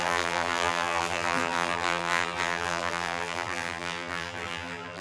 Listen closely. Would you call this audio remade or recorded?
remade